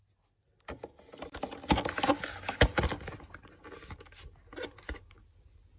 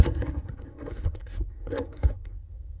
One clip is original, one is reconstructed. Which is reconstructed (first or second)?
second